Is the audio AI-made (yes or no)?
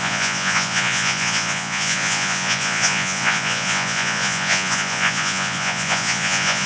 yes